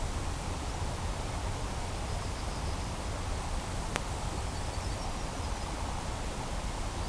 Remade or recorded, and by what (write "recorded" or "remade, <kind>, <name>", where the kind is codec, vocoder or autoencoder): recorded